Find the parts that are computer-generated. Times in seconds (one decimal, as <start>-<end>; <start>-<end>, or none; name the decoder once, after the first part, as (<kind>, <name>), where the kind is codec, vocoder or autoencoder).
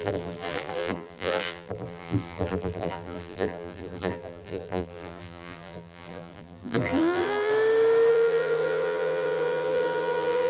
0.0-7.5 (vocoder, BigVGAN v2); 8.1-10.5